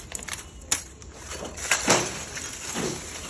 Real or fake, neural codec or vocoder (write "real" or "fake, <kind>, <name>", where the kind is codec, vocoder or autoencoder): real